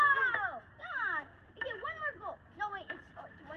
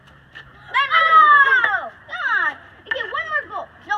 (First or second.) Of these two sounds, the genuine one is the first